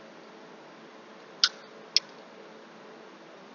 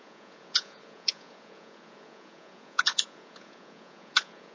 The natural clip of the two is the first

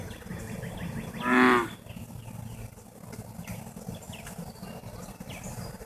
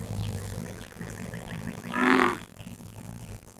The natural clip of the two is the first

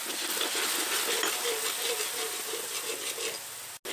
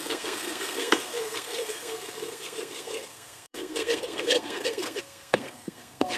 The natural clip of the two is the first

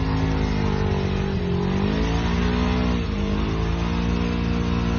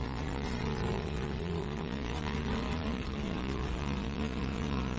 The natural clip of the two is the first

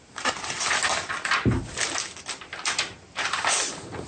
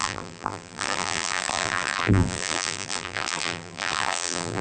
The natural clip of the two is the first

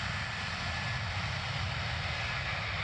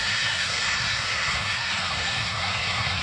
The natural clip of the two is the first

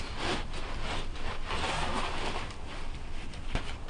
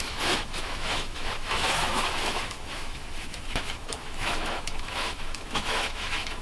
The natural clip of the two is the first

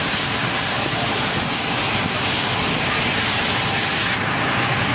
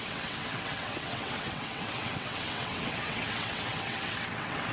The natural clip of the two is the first